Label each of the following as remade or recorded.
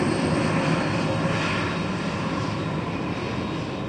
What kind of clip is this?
recorded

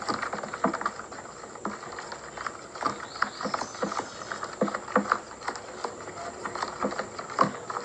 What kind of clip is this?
recorded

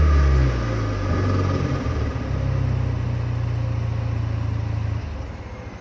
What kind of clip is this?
recorded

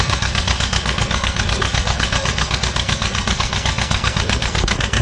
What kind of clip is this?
remade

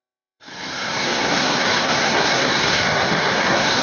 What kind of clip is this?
remade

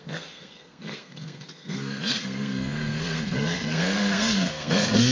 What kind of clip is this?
remade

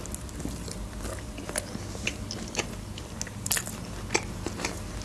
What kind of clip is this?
recorded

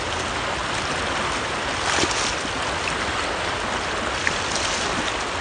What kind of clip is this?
recorded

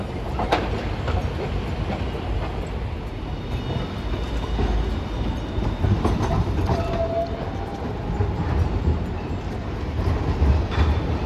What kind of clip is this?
recorded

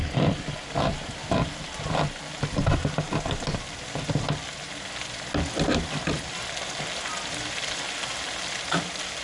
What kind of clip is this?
recorded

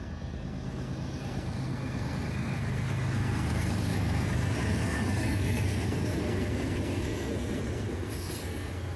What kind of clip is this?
remade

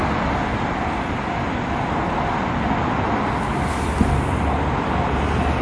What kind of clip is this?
recorded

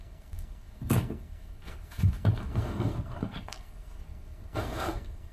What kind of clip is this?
remade